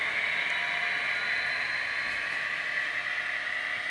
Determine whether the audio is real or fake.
real